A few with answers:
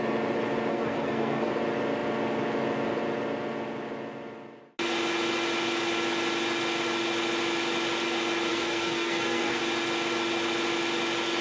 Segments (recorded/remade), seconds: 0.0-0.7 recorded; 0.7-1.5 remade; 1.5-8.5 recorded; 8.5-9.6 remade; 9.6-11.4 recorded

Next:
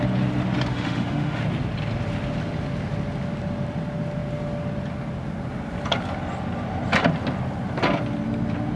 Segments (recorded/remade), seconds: 0.0-0.7 recorded; 0.7-1.4 remade; 1.4-8.8 recorded

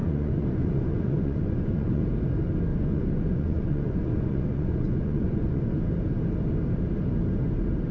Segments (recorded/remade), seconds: 0.0-2.0 remade; 2.0-2.7 recorded; 2.7-5.7 remade; 5.7-7.9 recorded